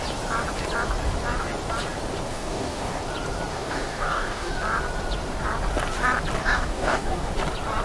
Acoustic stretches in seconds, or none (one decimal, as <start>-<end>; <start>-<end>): 0.0-2.3; 3.0-3.5; 4.5-6.4; 7.3-7.8